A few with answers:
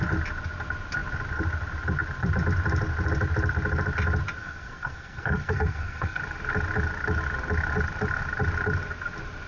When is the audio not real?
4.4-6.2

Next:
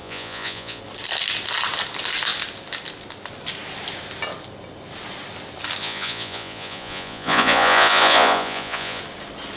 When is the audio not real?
0.0-0.8; 5.8-9.0